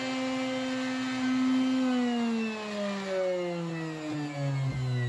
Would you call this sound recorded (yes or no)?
yes